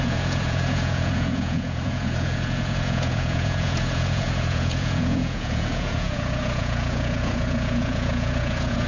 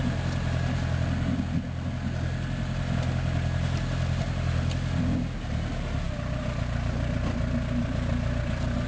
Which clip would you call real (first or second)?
second